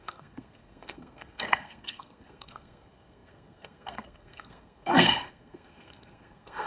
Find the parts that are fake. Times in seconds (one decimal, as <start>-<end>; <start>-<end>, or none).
0.0-6.7